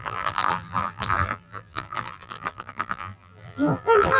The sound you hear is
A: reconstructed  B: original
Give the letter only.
A